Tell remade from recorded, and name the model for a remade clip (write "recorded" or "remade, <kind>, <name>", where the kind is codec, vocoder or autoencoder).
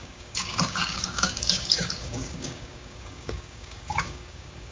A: remade, codec, DAC